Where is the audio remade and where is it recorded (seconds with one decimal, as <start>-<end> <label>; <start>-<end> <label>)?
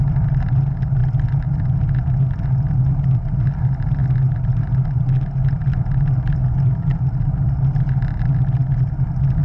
0.0-4.0 recorded; 4.0-4.7 remade; 4.7-9.4 recorded